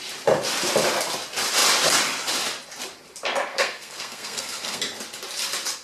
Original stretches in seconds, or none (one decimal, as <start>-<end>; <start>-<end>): 0.0-3.5; 4.8-5.8